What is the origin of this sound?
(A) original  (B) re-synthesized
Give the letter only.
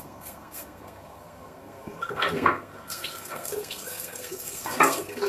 B